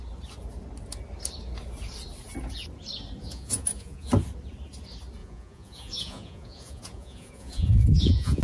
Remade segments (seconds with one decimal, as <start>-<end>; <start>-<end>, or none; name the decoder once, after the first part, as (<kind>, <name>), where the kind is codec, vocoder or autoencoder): 3.2-4.1 (vocoder, Vocos); 5.2-8.4